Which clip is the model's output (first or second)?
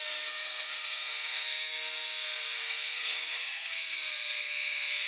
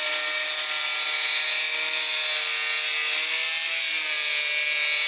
first